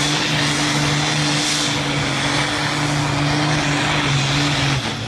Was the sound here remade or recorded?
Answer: recorded